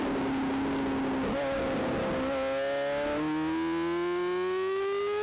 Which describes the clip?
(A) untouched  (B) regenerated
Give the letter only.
A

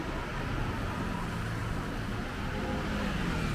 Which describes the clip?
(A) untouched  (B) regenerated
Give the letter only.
A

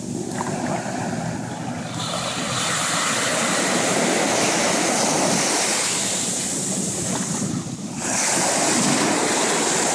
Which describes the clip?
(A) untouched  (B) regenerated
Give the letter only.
A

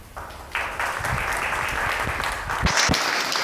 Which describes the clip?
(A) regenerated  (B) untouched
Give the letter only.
B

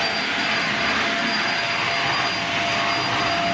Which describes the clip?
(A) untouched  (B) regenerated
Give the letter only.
A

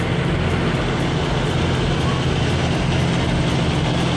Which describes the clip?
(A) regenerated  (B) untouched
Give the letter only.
B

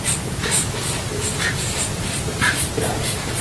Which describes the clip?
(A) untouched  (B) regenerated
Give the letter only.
B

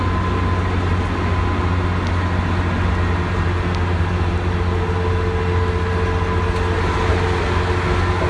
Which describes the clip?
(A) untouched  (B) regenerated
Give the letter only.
A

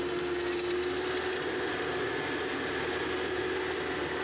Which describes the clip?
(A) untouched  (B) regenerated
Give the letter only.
A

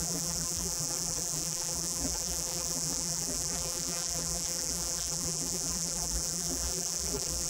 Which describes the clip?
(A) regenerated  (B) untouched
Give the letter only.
A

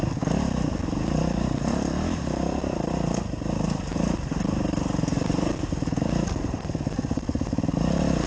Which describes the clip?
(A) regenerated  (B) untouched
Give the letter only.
A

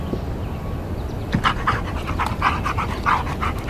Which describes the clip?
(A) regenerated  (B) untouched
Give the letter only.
B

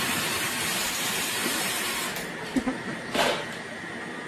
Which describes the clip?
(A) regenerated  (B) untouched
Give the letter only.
A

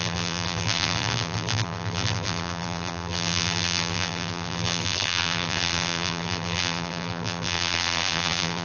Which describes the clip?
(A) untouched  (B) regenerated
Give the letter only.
B